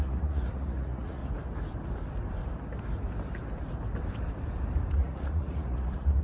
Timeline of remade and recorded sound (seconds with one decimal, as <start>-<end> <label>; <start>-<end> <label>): 0.0-1.2 remade; 1.2-4.9 recorded; 4.9-6.2 remade